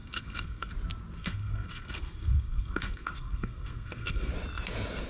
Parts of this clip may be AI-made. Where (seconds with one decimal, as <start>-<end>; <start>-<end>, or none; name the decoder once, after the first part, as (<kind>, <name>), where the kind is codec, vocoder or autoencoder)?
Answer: 0.0-0.7 (codec, SNAC); 1.2-4.3